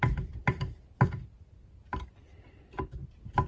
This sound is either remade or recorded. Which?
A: recorded